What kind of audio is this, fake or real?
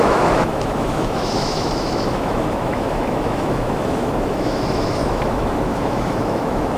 fake